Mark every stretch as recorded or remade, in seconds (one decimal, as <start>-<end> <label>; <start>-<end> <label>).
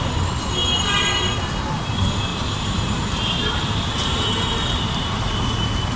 0.0-2.3 recorded; 2.3-6.0 remade